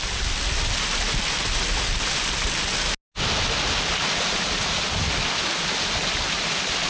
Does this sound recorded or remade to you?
recorded